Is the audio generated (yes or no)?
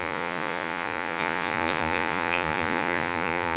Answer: yes